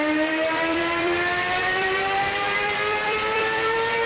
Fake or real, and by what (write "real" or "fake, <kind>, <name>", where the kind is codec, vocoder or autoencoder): fake, vocoder, BigVGAN v2